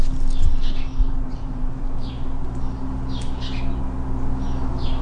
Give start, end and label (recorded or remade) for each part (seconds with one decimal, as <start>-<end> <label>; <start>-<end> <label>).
0.0-1.0 recorded; 1.0-2.1 remade; 2.1-5.0 recorded